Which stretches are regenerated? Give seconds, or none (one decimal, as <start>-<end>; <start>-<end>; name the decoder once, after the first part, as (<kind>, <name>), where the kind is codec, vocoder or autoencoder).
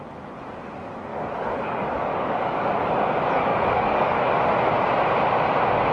1.1-2.9 (codec, DAC); 3.5-4.2